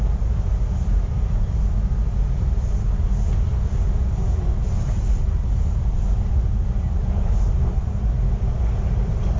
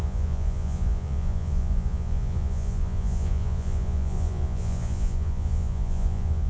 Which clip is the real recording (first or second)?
first